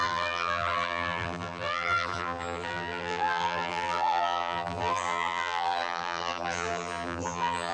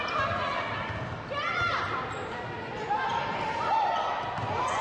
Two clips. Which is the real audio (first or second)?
second